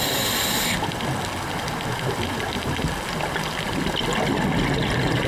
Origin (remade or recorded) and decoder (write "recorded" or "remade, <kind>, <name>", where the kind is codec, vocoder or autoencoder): recorded